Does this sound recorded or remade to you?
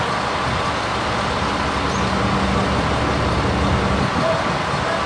recorded